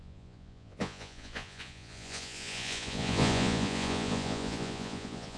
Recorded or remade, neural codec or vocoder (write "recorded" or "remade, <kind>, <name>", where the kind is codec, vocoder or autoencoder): remade, vocoder, Vocos